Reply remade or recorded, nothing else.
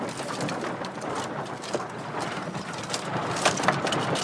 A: recorded